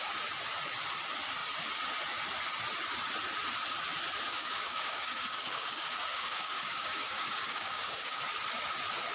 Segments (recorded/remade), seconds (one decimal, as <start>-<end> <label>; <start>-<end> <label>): 0.0-4.3 recorded; 4.3-8.2 remade; 8.2-9.1 recorded